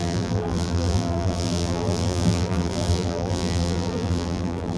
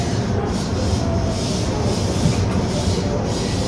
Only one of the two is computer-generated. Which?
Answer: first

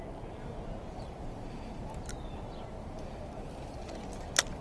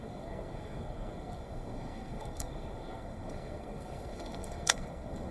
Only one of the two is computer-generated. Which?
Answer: second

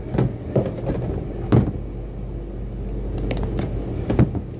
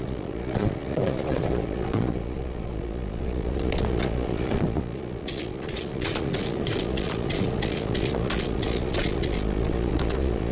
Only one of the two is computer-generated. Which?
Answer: second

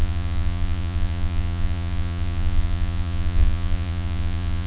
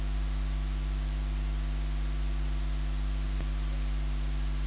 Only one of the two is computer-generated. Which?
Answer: first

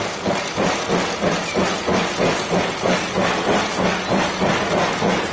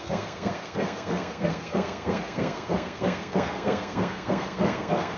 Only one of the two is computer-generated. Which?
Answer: second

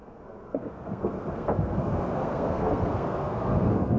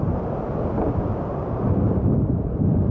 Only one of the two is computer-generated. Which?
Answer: first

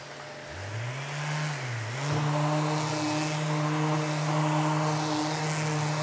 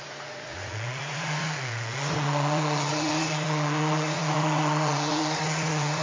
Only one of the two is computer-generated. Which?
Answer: second